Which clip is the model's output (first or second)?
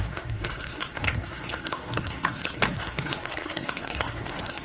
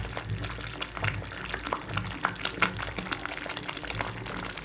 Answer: first